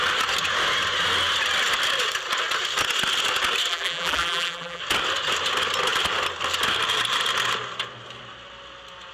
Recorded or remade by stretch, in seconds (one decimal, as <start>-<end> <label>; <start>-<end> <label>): 0.0-3.7 recorded; 3.7-4.8 remade; 4.8-9.1 recorded